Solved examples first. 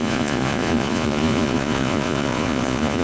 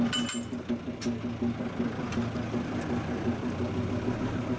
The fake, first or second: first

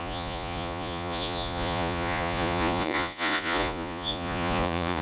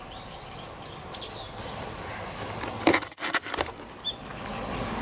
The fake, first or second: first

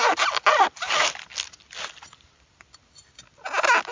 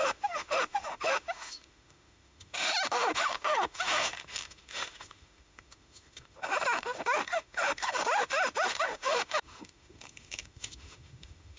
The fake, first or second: second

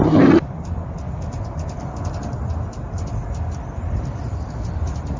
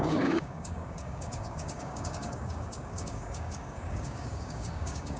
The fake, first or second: second